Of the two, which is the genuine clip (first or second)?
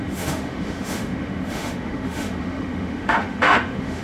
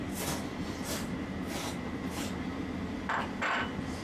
second